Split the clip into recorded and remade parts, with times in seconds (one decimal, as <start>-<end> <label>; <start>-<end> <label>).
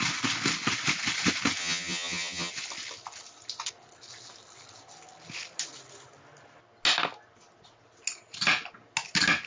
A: 0.0-1.6 recorded; 1.6-2.5 remade; 2.5-9.5 recorded